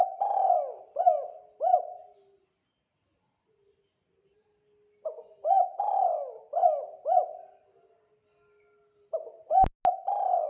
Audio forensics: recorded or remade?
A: recorded